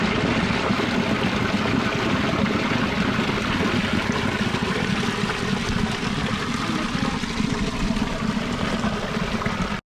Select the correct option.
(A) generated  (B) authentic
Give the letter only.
B